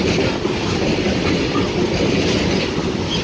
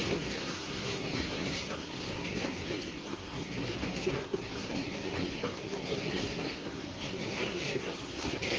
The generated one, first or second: second